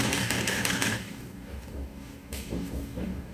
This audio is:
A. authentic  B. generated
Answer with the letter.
B